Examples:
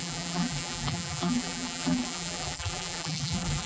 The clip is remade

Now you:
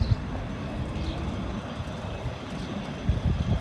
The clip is recorded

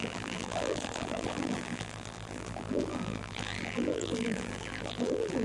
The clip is remade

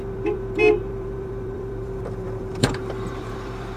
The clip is remade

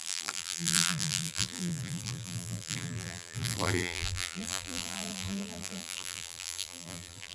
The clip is remade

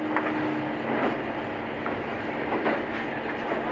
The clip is recorded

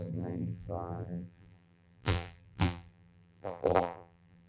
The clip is remade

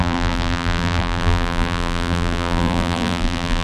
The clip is remade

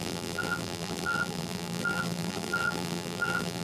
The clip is remade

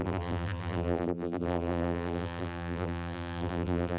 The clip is remade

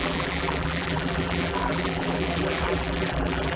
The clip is remade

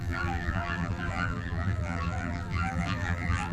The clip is remade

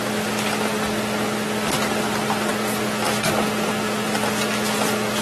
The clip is recorded